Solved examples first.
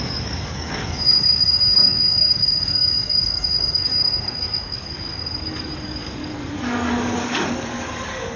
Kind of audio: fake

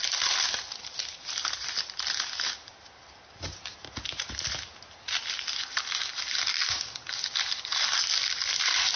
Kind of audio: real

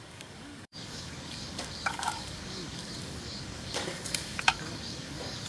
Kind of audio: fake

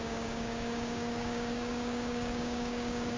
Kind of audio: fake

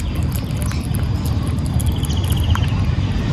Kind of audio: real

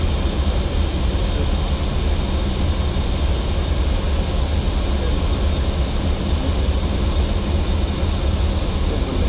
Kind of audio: real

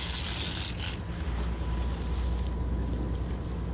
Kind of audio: real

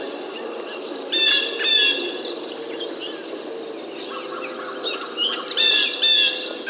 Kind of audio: real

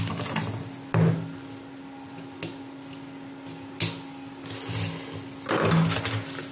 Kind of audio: real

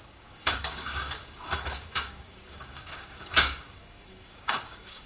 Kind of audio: fake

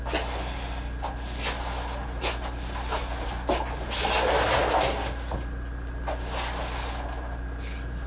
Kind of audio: real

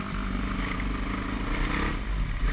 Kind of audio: real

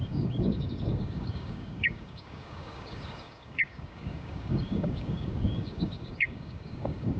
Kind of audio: fake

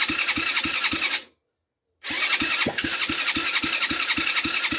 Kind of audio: real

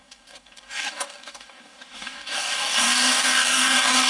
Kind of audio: fake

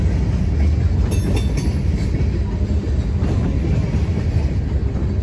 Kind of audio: real